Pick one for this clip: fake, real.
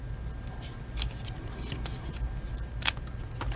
real